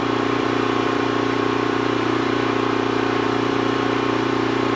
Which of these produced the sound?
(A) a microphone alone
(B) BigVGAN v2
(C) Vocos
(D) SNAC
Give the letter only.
B